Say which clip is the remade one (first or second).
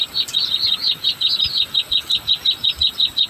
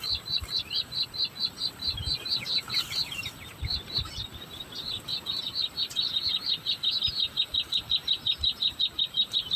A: second